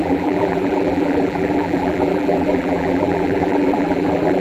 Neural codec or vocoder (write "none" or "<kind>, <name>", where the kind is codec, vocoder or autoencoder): vocoder, BigVGAN v2